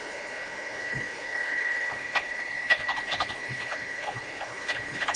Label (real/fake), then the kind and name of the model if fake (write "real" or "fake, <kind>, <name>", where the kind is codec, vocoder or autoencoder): fake, codec, HILCodec